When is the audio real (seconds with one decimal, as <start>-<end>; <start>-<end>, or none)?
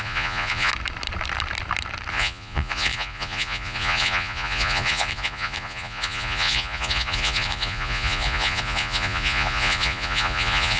0.7-2.1